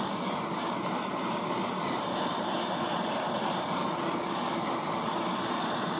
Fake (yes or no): yes